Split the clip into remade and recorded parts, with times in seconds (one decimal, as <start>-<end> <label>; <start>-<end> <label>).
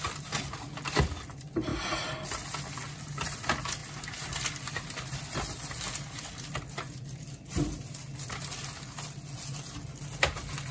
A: 0.0-10.7 recorded